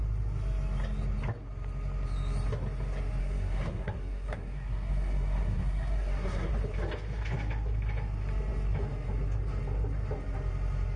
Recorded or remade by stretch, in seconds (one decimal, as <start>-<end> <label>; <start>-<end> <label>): 0.0-3.2 recorded; 3.2-6.5 remade; 6.5-11.0 recorded